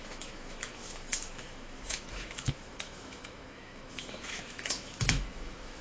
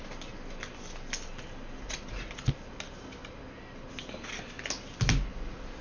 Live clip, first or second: second